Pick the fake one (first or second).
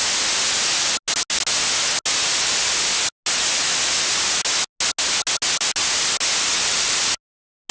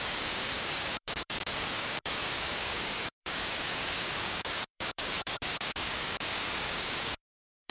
second